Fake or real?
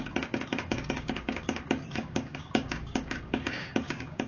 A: fake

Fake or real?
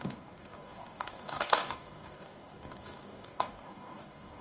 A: fake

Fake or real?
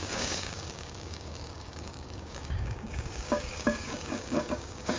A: fake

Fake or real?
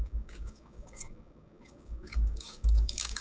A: fake